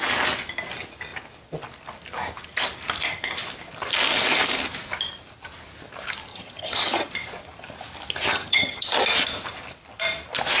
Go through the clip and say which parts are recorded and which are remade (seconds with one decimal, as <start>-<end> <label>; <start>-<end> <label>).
0.0-6.3 recorded; 6.3-7.1 remade; 7.1-8.3 recorded; 8.3-9.0 remade; 9.0-10.6 recorded